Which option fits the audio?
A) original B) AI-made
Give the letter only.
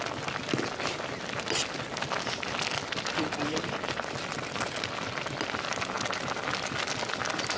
A